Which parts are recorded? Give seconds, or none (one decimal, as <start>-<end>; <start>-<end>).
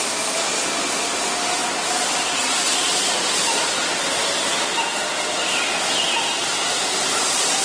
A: 0.0-7.6